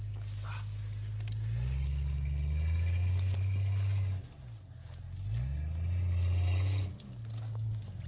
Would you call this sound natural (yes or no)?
yes